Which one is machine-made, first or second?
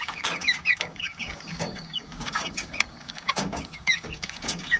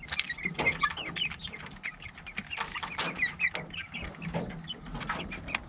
first